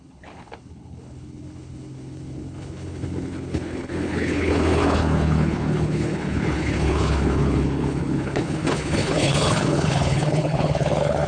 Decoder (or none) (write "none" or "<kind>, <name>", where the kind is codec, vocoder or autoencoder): codec, HILCodec